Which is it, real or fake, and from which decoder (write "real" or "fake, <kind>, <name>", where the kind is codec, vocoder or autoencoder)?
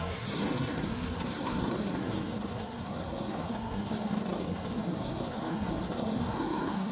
fake, codec, SNAC